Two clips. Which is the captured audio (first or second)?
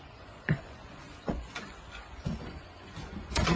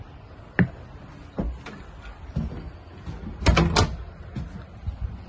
second